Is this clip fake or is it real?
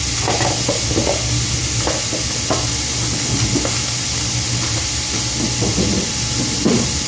real